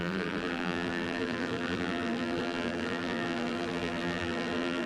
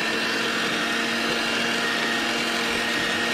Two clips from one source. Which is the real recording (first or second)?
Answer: second